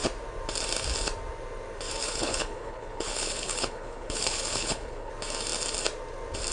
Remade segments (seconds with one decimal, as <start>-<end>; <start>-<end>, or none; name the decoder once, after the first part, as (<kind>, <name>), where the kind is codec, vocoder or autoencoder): 2.0-5.1 (codec, HILCodec)